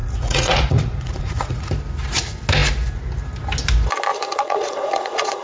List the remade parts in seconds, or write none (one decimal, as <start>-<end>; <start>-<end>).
0.0-1.7; 4.1-5.4